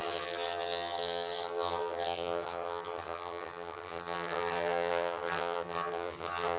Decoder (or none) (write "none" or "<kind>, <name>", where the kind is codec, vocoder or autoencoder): vocoder, HiFi-GAN